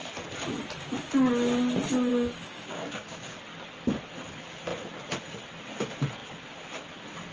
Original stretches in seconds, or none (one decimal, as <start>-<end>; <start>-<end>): 0.0-2.1; 3.4-7.3